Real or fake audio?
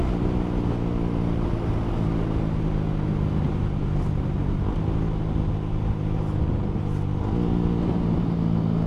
real